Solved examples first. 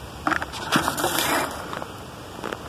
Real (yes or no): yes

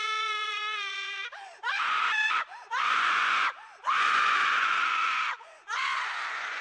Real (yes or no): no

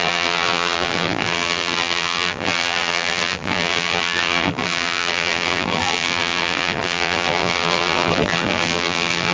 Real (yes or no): no